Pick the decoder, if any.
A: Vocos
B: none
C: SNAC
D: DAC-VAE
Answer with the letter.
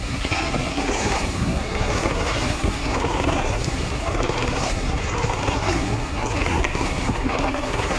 C